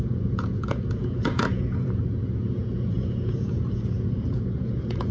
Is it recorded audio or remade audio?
remade